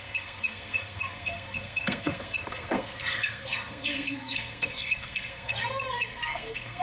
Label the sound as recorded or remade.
remade